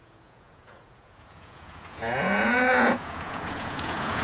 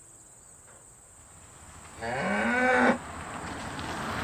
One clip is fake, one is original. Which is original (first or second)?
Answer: second